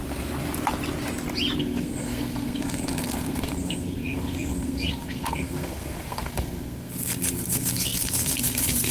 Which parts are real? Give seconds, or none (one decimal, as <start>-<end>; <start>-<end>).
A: 0.0-1.6